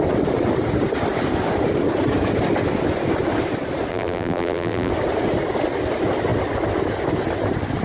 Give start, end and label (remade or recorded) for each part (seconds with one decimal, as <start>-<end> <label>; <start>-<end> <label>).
0.0-3.9 recorded; 3.9-4.9 remade; 4.9-7.8 recorded